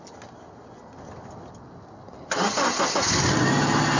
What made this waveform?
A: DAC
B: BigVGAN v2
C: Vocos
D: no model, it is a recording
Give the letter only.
D